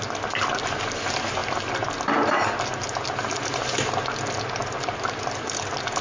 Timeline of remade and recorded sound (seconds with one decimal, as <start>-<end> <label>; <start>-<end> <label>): 0.0-4.6 recorded; 4.6-5.4 remade; 5.4-6.0 recorded